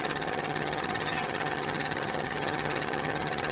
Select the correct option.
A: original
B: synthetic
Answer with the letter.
B